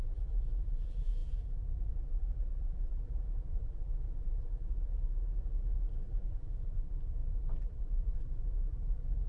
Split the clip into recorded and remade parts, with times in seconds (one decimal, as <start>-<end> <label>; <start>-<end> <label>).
0.0-9.3 remade